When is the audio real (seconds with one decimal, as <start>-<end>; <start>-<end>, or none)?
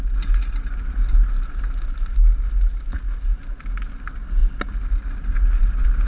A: 0.0-6.1